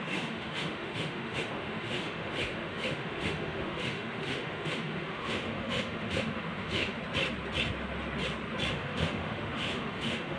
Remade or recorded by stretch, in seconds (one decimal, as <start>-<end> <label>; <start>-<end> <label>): 0.0-7.0 remade; 7.0-8.7 recorded; 8.7-10.4 remade